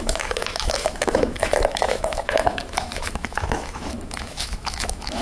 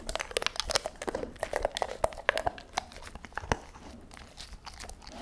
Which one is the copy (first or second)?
first